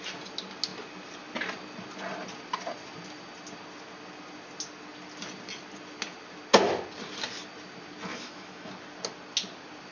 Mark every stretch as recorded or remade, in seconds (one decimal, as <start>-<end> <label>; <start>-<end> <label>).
0.0-8.1 recorded; 8.1-8.7 remade; 8.7-9.9 recorded